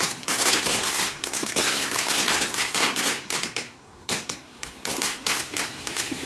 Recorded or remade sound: remade